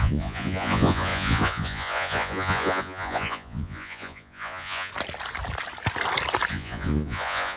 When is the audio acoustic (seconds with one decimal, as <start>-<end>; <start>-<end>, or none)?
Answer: 4.9-6.5

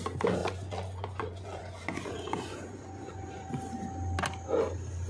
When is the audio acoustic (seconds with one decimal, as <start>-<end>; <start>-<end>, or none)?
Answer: 0.0-0.4; 3.5-5.1

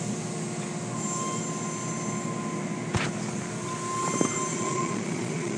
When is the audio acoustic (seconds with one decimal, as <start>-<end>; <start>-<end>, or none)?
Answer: 0.0-4.5